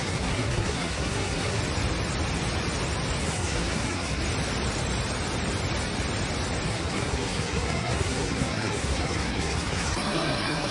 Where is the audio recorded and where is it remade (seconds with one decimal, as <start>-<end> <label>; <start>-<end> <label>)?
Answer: 0.0-1.6 remade; 1.6-3.2 recorded; 3.2-4.2 remade; 4.2-6.7 recorded; 6.7-10.7 remade